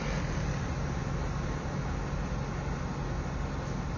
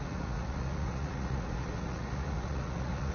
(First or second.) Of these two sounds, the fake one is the second